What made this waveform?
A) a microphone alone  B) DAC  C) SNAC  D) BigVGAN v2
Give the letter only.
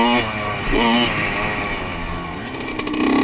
A